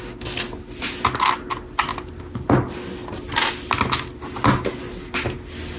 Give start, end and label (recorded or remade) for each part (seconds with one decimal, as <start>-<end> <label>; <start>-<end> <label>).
0.0-5.8 recorded